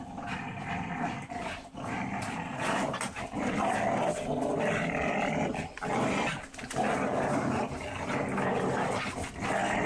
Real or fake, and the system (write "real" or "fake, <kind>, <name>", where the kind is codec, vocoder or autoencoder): real